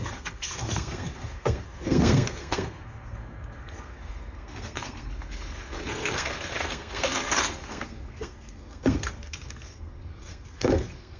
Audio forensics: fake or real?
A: fake